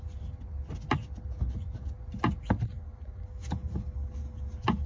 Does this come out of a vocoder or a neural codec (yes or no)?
no